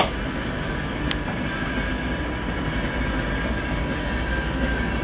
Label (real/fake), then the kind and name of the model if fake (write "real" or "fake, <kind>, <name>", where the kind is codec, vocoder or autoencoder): real